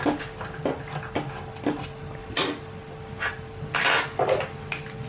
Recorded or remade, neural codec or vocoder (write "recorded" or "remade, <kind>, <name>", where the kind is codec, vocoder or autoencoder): recorded